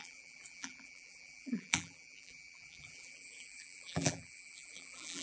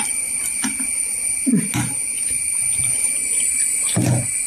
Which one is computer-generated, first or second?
first